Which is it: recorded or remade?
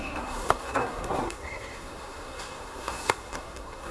remade